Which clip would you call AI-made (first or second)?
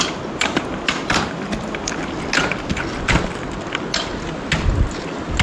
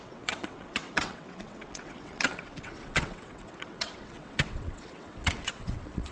second